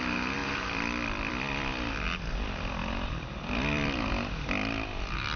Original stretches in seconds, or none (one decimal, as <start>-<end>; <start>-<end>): 0.0-0.4; 1.5-2.8; 4.1-5.4

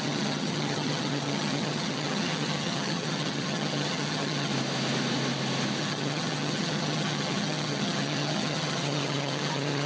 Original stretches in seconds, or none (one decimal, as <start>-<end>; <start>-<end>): 4.5-5.8